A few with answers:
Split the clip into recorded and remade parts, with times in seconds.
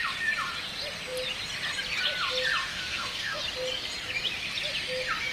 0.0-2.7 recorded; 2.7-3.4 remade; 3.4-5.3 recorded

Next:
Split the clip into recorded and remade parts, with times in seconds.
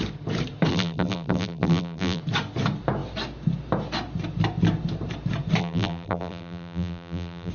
0.0-0.7 recorded; 0.7-2.2 remade; 2.2-5.6 recorded; 5.6-7.5 remade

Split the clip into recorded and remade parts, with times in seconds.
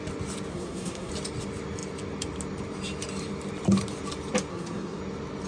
0.0-0.5 recorded; 0.5-1.1 remade; 1.1-4.5 recorded; 4.5-5.0 remade; 5.0-5.5 recorded